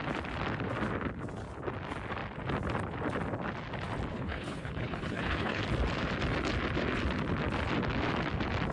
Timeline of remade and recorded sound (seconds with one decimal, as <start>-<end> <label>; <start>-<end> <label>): 0.0-4.1 recorded; 4.1-5.6 remade; 5.6-8.7 recorded